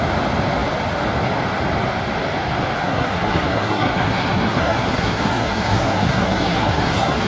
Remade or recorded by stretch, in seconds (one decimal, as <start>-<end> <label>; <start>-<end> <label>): 0.0-2.8 recorded; 2.8-7.3 remade